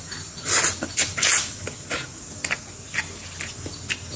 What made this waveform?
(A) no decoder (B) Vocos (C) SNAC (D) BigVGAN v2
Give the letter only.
A